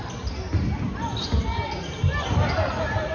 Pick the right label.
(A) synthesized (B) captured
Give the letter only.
B